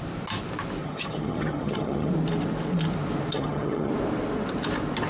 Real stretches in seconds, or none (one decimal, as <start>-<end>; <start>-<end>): 0.0-0.8; 2.1-3.3; 3.9-5.1